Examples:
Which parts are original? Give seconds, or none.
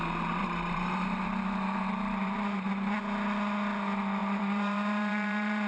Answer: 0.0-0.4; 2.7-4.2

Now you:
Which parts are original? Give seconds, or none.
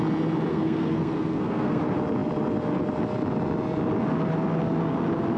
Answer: 0.0-0.5; 1.8-5.4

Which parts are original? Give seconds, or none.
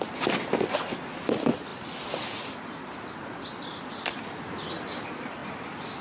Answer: 0.0-6.0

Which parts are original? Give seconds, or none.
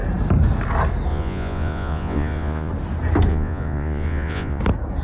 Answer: 0.0-1.1; 2.7-3.3; 4.6-5.0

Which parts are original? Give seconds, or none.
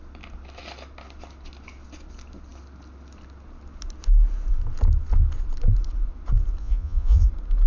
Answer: 0.0-6.6; 7.3-7.7